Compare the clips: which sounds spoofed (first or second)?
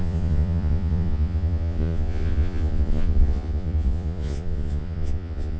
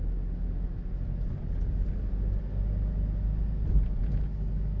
first